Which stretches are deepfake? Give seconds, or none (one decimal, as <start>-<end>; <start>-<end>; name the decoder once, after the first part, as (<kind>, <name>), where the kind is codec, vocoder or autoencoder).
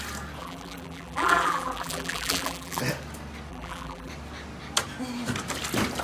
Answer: 0.4-2.8 (vocoder, BigVGAN v2); 3.5-4.1